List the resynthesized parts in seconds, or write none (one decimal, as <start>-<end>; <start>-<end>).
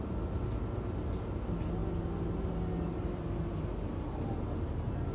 none